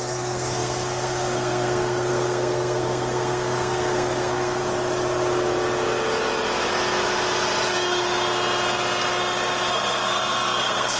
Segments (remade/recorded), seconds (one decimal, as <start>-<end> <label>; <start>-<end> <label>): 0.0-4.6 remade; 4.6-9.7 recorded; 9.7-11.0 remade

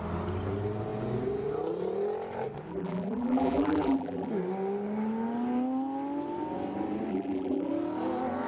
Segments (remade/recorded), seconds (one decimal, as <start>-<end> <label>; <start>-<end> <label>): 0.0-2.7 recorded; 2.7-4.3 remade; 4.3-7.1 recorded; 7.1-7.7 remade; 7.7-8.5 recorded